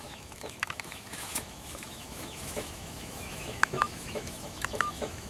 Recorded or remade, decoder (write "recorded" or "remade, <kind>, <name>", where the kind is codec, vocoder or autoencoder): remade, autoencoder, DAC-VAE